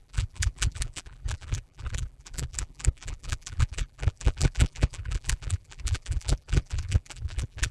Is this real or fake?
fake